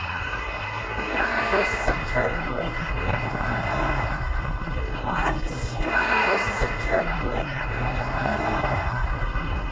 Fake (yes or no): yes